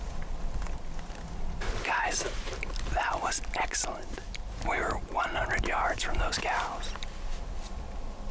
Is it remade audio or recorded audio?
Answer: recorded